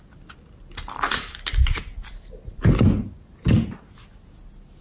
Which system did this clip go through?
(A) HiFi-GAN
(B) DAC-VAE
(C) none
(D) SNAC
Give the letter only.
C